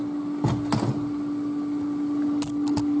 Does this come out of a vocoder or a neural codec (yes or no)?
no